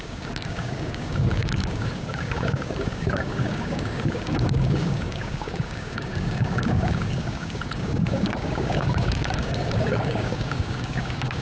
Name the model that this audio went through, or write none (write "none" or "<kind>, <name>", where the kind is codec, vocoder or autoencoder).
codec, DAC